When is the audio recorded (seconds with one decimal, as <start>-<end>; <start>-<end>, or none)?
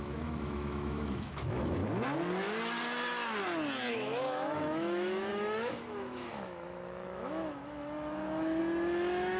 1.8-3.9